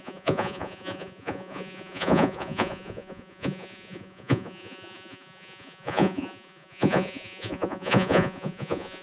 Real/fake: fake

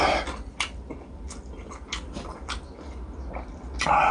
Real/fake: real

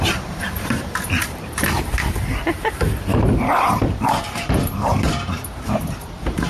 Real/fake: fake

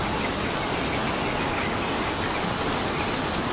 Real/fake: real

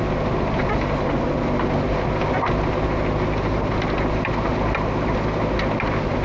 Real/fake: real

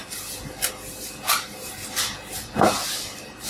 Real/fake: real